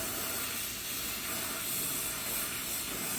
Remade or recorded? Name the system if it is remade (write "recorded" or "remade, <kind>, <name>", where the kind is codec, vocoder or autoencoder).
recorded